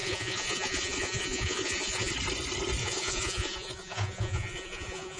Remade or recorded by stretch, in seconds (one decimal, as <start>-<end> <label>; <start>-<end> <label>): 0.0-2.1 remade; 2.1-2.8 recorded; 2.8-5.2 remade